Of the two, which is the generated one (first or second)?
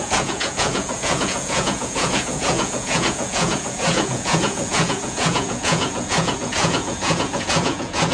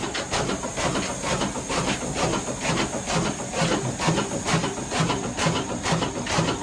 first